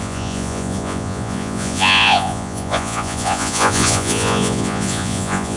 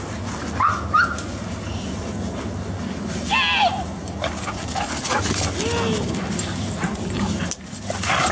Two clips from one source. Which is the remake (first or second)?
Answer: first